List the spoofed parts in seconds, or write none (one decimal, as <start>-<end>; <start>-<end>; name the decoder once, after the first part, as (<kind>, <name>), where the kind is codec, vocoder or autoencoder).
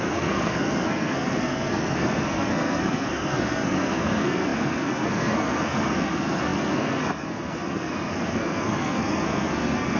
0.0-10.0 (codec, SNAC)